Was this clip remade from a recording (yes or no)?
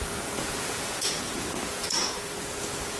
yes